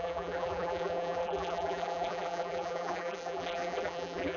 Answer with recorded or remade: remade